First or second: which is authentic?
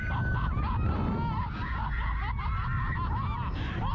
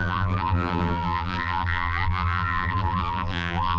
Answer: first